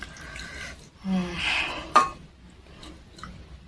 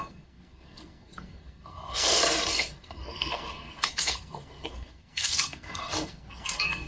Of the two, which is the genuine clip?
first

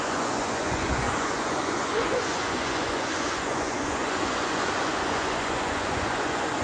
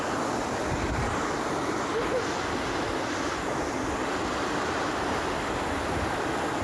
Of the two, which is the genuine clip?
second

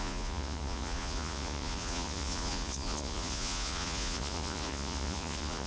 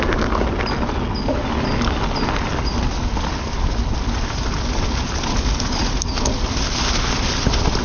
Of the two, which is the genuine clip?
second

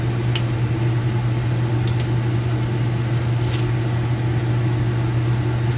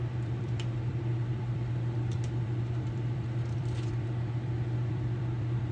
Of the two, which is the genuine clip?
first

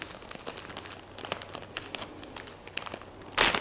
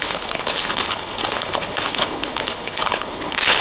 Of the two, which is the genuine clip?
first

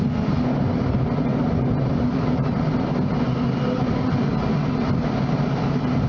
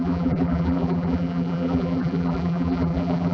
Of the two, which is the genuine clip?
first